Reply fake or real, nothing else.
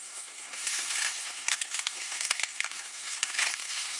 fake